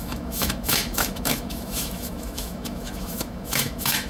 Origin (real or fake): fake